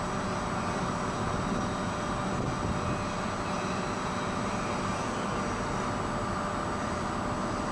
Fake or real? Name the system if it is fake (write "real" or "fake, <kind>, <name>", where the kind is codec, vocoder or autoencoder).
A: real